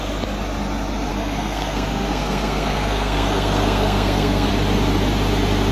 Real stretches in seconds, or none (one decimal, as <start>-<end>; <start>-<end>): 0.0-1.1; 4.5-5.7